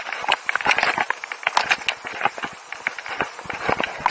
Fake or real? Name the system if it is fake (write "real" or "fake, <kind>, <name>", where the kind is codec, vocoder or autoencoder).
real